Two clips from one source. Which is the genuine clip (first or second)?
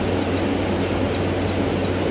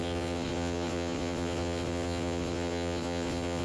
first